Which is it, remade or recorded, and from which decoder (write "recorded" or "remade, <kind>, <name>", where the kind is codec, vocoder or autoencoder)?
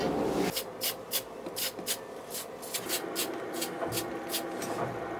recorded